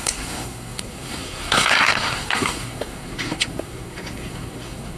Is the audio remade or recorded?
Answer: remade